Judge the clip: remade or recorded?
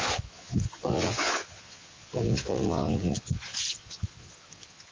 remade